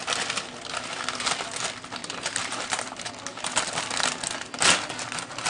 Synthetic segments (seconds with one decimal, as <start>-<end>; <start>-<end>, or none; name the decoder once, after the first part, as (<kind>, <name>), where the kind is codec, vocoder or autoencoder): 2.0-3.1 (vocoder, BigVGAN v2)